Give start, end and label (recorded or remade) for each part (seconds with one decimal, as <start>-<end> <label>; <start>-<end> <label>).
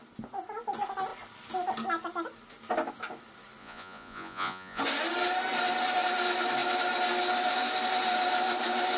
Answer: 0.0-3.6 recorded; 3.6-4.8 remade; 4.8-9.0 recorded